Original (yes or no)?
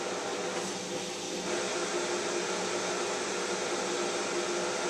yes